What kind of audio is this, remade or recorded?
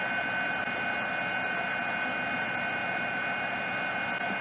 recorded